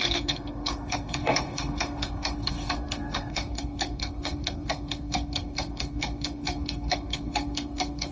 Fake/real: fake